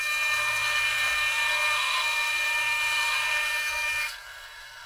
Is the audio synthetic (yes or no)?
yes